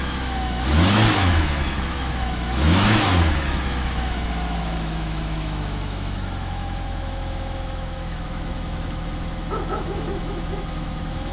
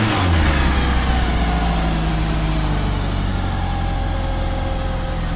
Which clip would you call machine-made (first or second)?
first